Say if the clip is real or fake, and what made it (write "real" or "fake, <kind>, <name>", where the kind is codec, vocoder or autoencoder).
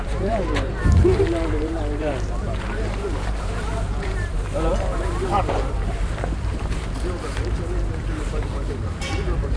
fake, vocoder, BigVGAN v2